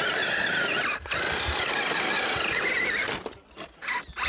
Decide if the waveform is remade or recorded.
recorded